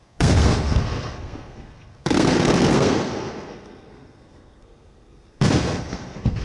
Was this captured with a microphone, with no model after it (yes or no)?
no